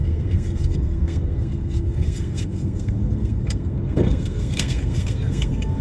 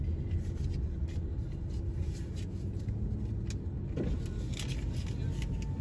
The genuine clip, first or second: second